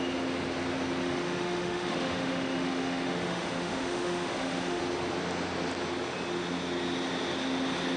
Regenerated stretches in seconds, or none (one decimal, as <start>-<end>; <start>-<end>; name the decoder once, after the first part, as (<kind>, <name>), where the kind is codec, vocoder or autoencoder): 1.0-4.8 (autoencoder, DAC-VAE)